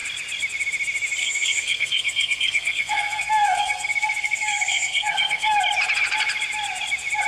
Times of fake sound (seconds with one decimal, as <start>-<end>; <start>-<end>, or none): 1.2-5.6